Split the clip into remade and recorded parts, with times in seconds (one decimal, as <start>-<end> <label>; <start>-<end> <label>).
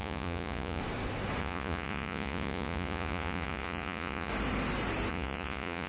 0.0-0.8 remade; 0.8-1.4 recorded; 1.4-4.3 remade; 4.3-5.1 recorded; 5.1-5.9 remade